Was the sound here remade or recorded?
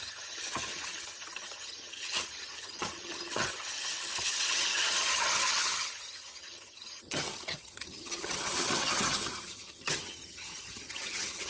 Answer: remade